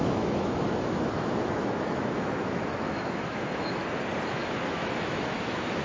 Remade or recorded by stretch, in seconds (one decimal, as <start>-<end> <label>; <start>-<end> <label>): 0.0-3.8 remade; 3.8-4.3 recorded; 4.3-5.8 remade